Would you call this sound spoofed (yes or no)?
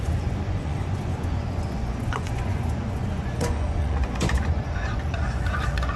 yes